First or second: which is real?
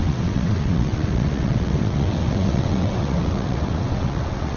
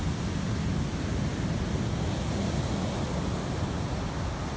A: second